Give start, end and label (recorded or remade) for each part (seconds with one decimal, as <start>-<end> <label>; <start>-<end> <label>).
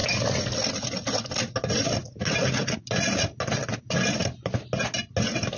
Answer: 0.0-5.6 recorded